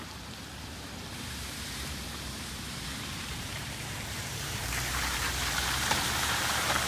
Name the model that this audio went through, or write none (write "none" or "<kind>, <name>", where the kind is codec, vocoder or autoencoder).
vocoder, BigVGAN v2